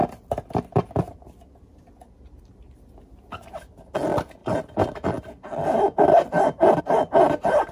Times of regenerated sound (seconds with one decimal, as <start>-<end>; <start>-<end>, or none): none